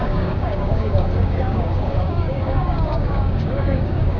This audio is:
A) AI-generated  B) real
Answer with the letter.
A